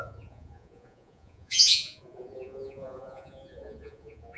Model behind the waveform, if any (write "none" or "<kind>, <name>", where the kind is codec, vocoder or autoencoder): vocoder, Vocos